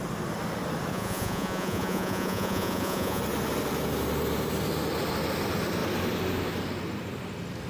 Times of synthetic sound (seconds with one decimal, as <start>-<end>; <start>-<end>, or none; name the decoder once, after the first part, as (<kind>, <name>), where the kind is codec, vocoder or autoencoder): 0.9-3.2 (vocoder, Vocos)